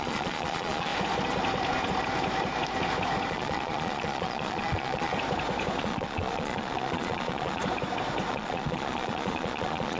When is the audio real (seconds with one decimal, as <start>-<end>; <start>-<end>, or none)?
0.9-3.3; 5.1-5.8; 7.6-8.3